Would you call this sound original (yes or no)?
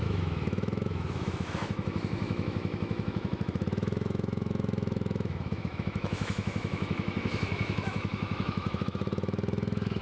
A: no